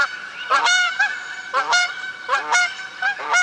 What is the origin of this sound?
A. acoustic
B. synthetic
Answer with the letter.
B